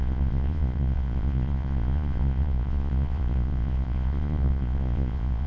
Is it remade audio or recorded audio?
remade